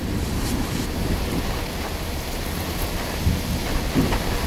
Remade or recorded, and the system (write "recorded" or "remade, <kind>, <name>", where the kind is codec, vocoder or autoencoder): remade, vocoder, BigVGAN v2